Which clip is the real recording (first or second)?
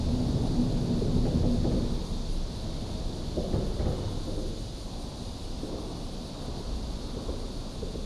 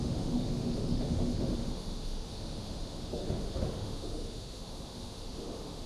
first